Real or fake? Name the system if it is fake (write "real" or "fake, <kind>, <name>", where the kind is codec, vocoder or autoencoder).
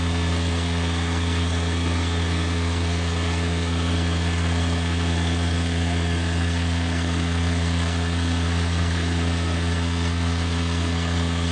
fake, codec, SNAC